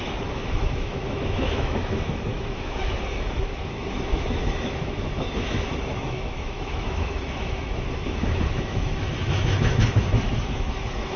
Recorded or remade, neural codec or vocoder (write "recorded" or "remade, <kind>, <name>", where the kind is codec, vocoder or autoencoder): remade, autoencoder, DAC-VAE